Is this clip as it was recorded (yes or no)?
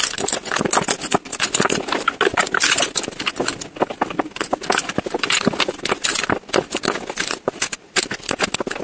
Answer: yes